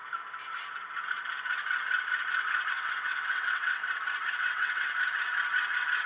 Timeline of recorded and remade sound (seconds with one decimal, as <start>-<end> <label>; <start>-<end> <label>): 0.0-2.7 recorded; 2.7-3.8 remade; 3.8-4.4 recorded; 4.4-4.9 remade; 4.9-6.1 recorded